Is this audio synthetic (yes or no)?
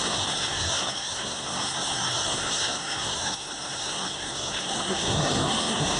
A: yes